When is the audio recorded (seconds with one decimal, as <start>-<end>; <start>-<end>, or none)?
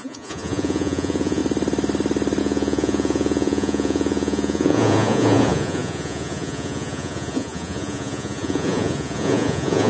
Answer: 1.4-2.4